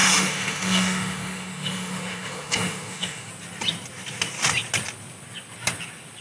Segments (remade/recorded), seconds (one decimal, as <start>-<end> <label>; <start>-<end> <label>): 0.0-3.3 remade; 3.3-6.2 recorded